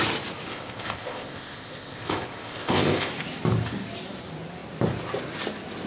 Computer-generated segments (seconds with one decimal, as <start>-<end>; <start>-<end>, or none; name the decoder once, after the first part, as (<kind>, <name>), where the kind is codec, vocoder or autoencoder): 0.5-3.1 (codec, ZipCodec)